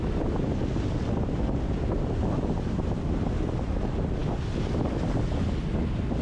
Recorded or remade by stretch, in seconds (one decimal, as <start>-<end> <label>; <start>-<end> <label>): 0.0-6.2 recorded